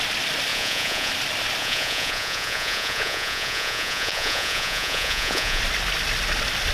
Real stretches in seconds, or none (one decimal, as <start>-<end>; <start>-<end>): 0.0-0.5; 1.1-1.6; 5.6-6.7